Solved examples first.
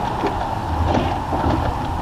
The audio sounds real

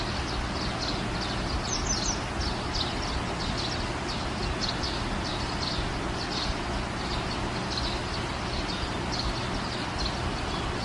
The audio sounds real